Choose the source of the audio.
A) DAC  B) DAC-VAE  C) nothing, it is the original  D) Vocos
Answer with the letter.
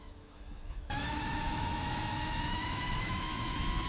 B